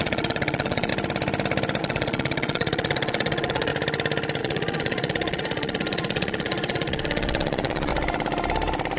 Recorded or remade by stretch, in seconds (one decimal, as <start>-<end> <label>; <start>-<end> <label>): 0.0-0.9 remade; 0.9-1.8 recorded; 1.8-3.7 remade; 3.7-4.4 recorded; 4.4-7.9 remade; 7.9-9.0 recorded